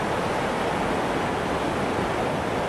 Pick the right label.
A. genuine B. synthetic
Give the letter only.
A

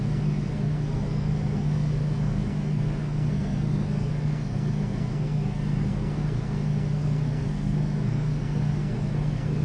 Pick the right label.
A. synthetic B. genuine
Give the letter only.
A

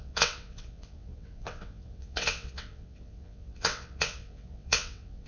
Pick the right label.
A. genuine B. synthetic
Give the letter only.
B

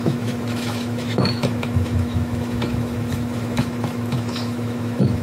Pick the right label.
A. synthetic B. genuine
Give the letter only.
A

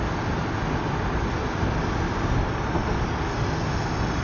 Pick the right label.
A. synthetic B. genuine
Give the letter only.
B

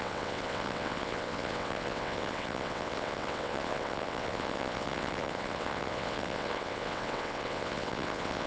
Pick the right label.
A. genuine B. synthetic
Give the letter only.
B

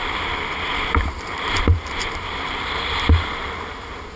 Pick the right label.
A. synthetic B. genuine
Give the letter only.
A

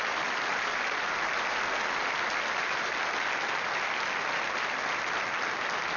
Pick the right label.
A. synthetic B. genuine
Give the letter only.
B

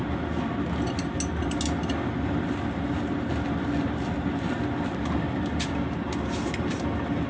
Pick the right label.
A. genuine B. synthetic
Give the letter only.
A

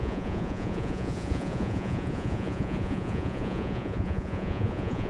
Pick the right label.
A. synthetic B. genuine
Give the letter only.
A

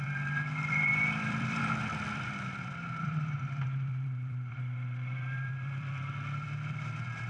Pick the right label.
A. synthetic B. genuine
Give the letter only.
A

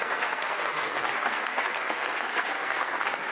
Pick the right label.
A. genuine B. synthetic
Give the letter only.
B